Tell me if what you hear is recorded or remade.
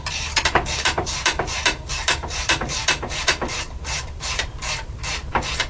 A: remade